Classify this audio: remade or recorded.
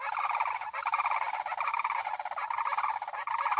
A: recorded